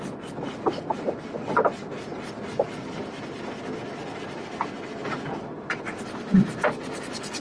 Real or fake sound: real